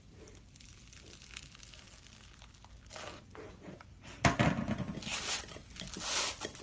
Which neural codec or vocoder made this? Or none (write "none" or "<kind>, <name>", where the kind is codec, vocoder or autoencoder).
none